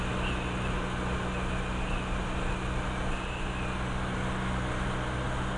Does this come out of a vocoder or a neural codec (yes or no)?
no